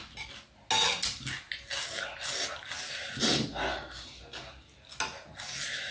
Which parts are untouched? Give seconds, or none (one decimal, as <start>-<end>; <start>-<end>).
0.0-5.9